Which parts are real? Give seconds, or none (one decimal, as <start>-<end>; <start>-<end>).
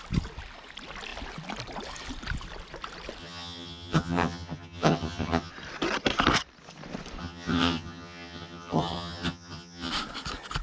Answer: 0.0-3.2; 5.5-7.2; 9.9-10.6